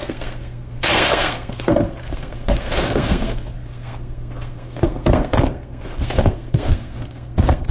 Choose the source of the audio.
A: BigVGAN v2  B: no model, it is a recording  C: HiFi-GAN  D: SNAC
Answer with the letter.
D